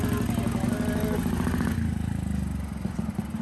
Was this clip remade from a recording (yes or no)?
no